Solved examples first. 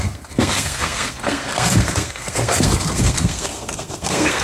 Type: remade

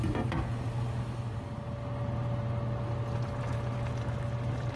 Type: recorded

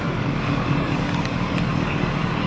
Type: remade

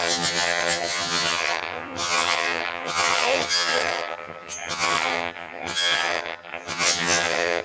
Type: remade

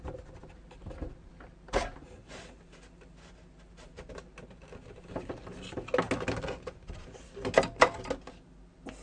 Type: recorded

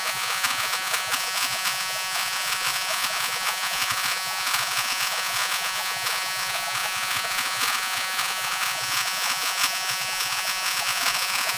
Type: remade